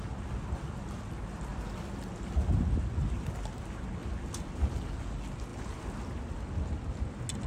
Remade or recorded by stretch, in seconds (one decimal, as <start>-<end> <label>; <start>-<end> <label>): 0.0-7.5 recorded